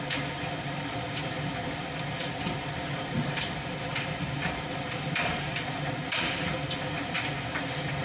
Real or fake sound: fake